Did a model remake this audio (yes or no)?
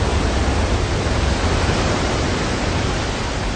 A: no